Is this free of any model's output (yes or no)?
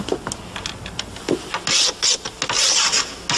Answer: yes